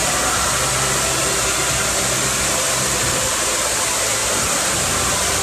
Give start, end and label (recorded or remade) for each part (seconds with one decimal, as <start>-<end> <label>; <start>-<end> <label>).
0.0-5.4 recorded